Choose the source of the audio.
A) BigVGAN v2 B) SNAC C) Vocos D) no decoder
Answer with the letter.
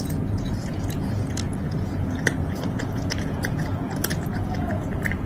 C